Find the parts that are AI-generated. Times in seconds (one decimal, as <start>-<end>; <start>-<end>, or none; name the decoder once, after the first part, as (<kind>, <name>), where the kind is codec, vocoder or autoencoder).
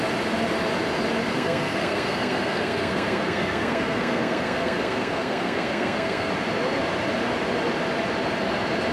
1.3-6.3 (codec, SNAC)